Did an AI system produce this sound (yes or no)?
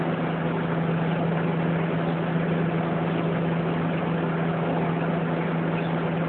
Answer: no